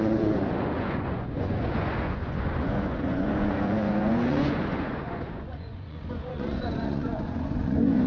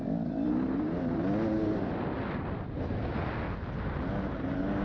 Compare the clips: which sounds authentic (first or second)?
second